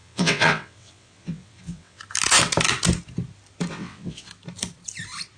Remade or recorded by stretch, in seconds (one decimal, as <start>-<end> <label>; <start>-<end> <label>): 0.0-2.0 remade; 2.0-3.7 recorded; 3.7-4.3 remade; 4.3-5.4 recorded